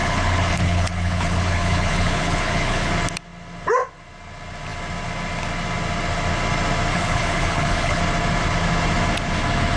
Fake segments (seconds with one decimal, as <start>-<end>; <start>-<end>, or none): 0.0-2.9; 6.9-8.0